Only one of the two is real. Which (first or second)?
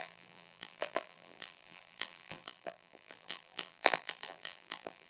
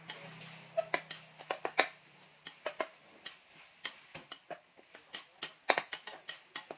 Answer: second